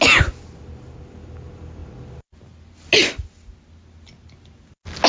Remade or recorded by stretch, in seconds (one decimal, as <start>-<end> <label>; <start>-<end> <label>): 0.0-5.1 recorded